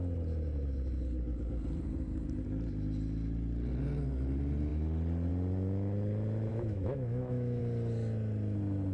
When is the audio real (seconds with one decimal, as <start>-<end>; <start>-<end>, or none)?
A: 0.0-6.5; 7.6-8.9